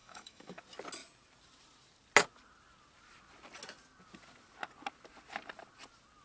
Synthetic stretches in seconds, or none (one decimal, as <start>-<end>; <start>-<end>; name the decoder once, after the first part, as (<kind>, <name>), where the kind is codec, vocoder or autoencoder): 0.0-0.6 (autoencoder, DAC-VAE)